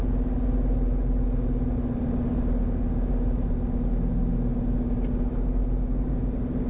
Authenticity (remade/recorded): recorded